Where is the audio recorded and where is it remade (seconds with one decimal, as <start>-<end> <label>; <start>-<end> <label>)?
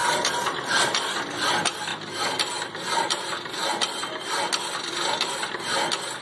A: 0.0-6.2 recorded